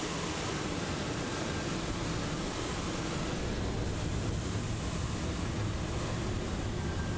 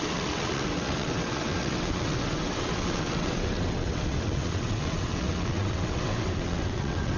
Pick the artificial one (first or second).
second